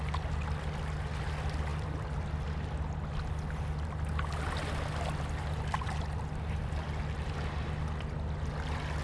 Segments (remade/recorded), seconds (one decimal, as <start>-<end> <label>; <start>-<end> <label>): 0.0-9.0 recorded